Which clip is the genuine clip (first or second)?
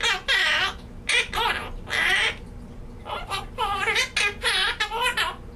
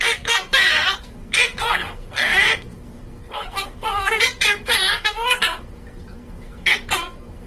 first